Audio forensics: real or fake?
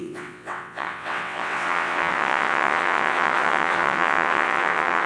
fake